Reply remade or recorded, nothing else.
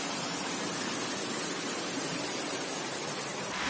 recorded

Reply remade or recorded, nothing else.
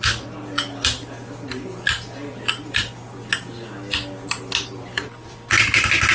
recorded